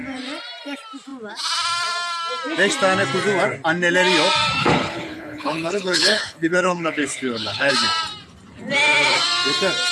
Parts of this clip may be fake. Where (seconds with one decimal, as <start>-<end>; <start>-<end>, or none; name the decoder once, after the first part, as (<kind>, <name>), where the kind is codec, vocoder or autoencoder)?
4.6-7.7 (codec, HILCodec)